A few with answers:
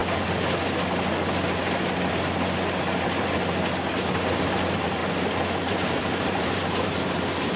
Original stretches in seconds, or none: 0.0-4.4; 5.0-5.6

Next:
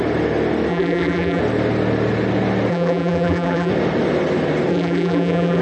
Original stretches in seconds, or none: 0.0-0.7; 1.4-2.7; 3.7-4.7

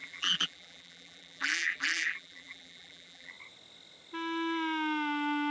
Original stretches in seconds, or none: 3.3-5.5

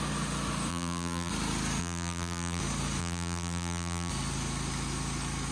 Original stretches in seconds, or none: 0.0-0.7; 1.3-1.8; 2.6-3.0; 4.1-5.5

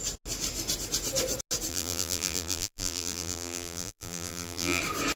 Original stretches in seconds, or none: 0.0-1.7; 4.8-5.2

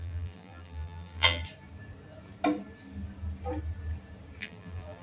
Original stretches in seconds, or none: 1.4-4.4

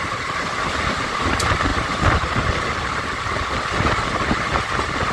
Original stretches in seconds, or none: 0.0-5.1

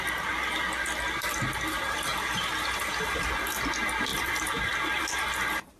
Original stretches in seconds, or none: 0.0-2.1; 2.9-4.1; 5.1-5.8